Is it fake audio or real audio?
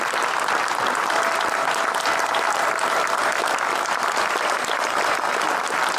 real